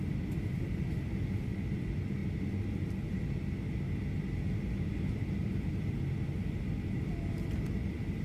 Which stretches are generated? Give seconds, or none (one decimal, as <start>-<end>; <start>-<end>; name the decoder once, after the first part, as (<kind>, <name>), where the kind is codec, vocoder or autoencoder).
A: none